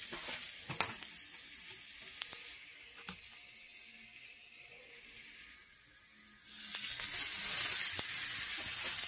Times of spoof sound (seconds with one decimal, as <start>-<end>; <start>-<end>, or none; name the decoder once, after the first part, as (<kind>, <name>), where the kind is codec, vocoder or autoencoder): none